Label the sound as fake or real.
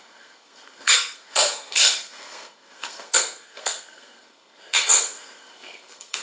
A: fake